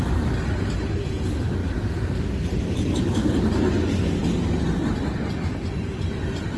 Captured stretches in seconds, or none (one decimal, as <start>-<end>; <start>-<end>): 0.0-6.6